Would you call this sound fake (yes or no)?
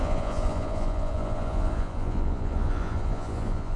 yes